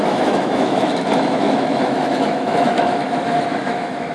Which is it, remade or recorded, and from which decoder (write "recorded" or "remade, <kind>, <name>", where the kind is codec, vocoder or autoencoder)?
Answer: remade, autoencoder, DAC-VAE